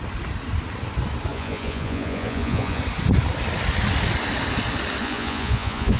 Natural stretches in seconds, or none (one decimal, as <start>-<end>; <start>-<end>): 0.0-1.3; 2.8-5.0